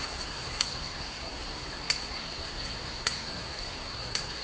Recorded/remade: remade